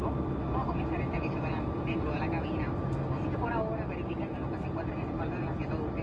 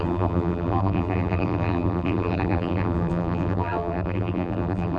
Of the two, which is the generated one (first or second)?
second